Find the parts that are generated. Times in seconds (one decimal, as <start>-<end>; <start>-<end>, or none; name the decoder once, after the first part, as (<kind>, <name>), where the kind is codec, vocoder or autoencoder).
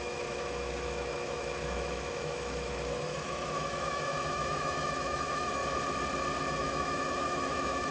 0.0-5.6 (autoencoder, DAC-VAE); 6.5-7.9